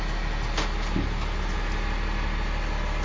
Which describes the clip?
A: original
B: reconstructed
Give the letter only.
A